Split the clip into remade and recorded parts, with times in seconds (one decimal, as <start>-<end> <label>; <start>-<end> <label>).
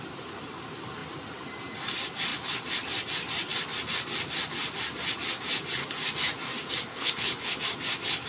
0.0-6.9 recorded; 6.9-7.6 remade; 7.6-8.3 recorded